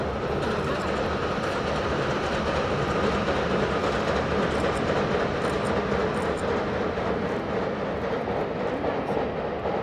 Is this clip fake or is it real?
real